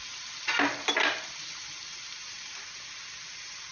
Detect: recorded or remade recorded